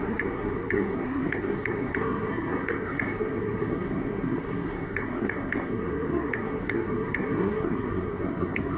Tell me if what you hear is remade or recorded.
remade